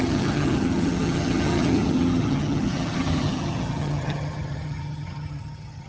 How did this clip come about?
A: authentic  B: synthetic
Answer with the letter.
B